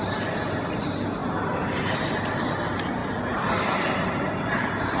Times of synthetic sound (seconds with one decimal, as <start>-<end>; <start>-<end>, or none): none